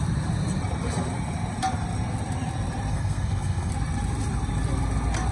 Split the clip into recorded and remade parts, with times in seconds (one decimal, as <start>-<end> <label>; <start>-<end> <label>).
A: 0.0-2.9 recorded; 2.9-3.7 remade; 3.7-5.3 recorded